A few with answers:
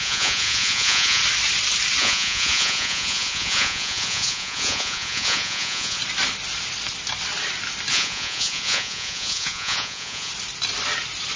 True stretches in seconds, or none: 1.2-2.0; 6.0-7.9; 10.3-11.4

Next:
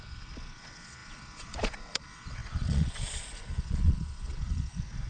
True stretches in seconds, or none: none

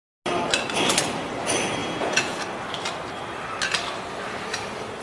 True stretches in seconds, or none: 0.0-1.8; 2.4-5.0

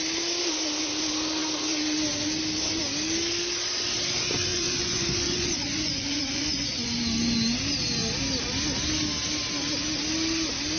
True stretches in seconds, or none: 0.0-4.5; 6.9-10.8

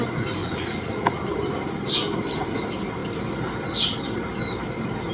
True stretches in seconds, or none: 0.0-0.4; 1.2-5.1

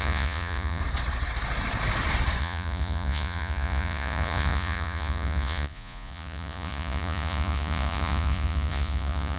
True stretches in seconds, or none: 0.8-2.4

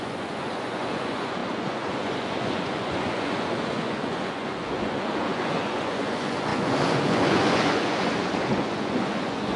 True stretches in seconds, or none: none